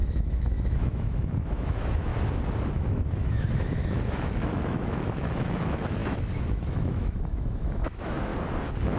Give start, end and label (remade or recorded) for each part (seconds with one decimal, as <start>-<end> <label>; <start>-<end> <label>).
0.0-2.1 remade; 2.1-2.7 recorded; 2.7-8.3 remade; 8.3-9.0 recorded